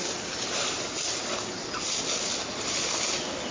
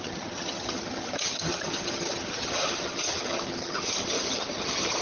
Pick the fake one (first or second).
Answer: second